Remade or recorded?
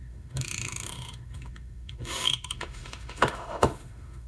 remade